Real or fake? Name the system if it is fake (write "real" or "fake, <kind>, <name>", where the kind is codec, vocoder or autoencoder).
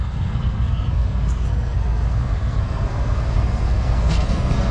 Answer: fake, codec, SNAC